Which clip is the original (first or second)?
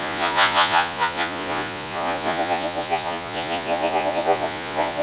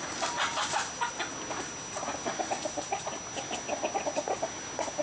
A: second